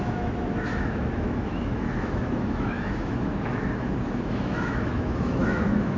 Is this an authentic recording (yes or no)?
no